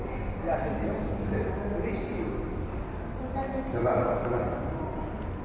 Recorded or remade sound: recorded